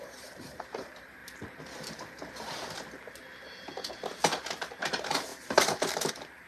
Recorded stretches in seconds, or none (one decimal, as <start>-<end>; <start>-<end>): 1.2-3.9